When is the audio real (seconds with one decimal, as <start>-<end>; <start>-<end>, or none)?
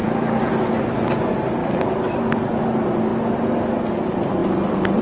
0.5-1.6; 2.7-5.0